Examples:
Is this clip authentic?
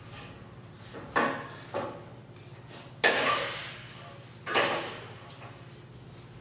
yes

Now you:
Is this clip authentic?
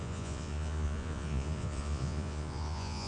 no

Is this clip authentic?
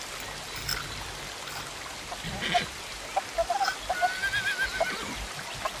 yes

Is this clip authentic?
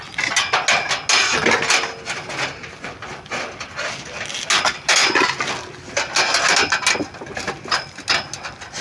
yes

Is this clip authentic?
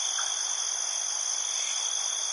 yes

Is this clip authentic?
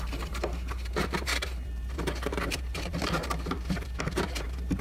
no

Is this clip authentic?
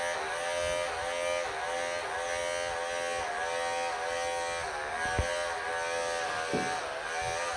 yes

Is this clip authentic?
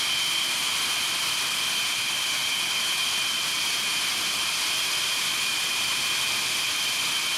yes